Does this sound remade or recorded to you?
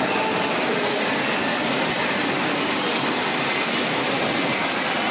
recorded